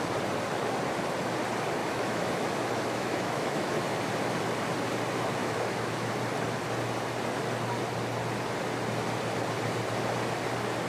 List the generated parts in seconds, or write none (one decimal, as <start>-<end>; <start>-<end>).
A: 1.8-3.7; 5.4-6.1